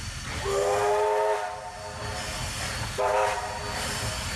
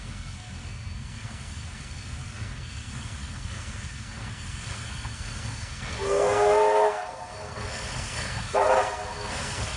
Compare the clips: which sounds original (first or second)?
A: first